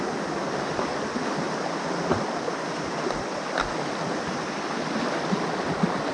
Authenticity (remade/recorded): recorded